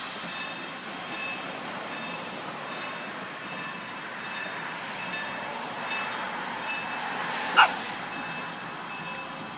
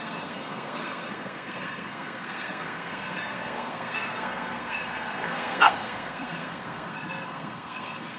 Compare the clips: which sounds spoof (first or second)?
second